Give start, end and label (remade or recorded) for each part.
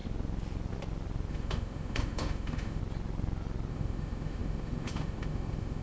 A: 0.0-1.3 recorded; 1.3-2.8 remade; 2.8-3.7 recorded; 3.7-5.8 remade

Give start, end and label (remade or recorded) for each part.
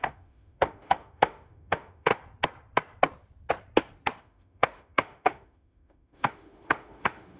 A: 0.0-2.1 remade; 2.1-4.2 recorded; 4.2-7.4 remade